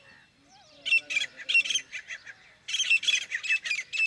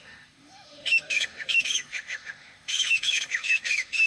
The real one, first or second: first